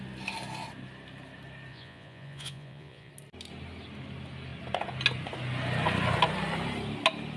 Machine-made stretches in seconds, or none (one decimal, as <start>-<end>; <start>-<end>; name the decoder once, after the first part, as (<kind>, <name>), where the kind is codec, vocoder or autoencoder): 1.7-3.1 (vocoder, Vocos)

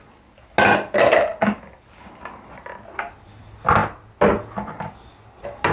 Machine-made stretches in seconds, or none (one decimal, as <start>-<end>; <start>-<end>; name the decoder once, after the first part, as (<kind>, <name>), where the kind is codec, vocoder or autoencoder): none

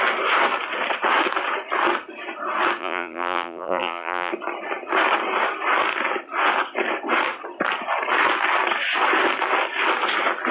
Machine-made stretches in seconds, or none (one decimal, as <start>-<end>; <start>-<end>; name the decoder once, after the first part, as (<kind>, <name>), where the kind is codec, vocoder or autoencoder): 2.8-4.3 (vocoder, BigVGAN v2)

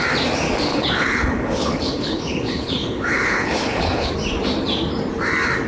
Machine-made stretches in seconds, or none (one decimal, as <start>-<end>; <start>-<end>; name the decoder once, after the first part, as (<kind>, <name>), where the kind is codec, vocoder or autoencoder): 0.7-4.1 (codec, HILCodec)

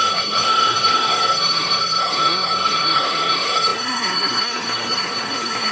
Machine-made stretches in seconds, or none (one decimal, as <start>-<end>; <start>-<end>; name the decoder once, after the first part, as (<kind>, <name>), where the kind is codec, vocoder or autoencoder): 0.0-5.7 (codec, SNAC)

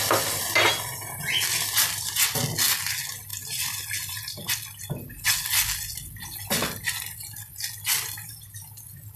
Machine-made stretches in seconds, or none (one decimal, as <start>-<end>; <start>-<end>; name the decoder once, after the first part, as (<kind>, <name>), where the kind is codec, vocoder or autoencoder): none

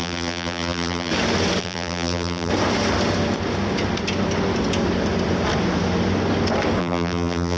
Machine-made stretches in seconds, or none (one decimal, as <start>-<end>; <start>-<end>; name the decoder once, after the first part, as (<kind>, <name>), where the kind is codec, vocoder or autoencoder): 0.0-1.1 (vocoder, BigVGAN v2); 1.6-2.5; 6.8-7.6